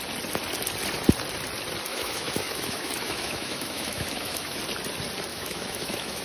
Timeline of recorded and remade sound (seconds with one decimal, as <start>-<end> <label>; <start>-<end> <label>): 0.0-1.9 recorded; 1.9-4.6 remade; 4.6-5.3 recorded; 5.3-6.2 remade